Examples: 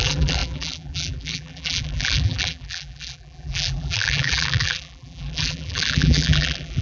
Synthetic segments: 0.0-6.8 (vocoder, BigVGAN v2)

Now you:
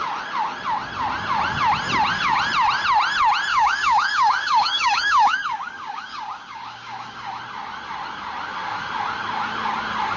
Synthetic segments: 3.5-7.4 (codec, DAC)

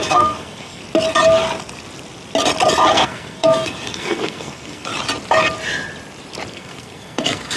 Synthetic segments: 0.0-0.8 (codec, SNAC); 2.9-4.9; 6.5-7.6

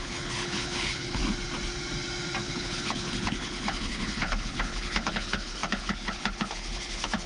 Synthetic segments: 0.0-1.2 (codec, HILCodec); 2.4-7.3